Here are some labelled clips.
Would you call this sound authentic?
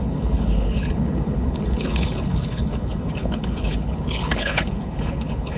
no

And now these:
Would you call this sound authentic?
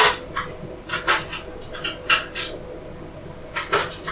yes